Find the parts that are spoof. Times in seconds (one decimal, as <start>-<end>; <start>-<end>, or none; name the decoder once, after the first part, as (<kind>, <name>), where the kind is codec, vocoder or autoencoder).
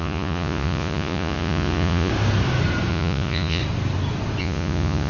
0.0-2.1 (vocoder, Vocos); 2.9-3.6; 4.4-5.1